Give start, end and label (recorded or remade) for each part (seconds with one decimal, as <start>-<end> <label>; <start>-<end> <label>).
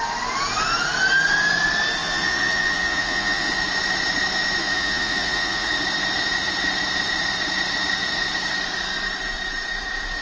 0.0-2.0 recorded; 2.0-3.5 remade; 3.5-4.6 recorded; 4.6-5.7 remade; 5.7-10.2 recorded